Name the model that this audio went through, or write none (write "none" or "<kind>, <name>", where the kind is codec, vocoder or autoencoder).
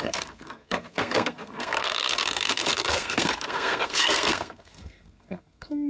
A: codec, SNAC